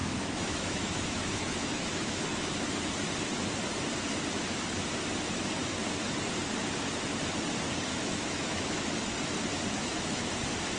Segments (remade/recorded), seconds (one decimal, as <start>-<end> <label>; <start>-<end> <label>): 0.0-2.9 remade; 2.9-7.9 recorded; 7.9-8.9 remade; 8.9-9.8 recorded; 9.8-10.3 remade; 10.3-10.8 recorded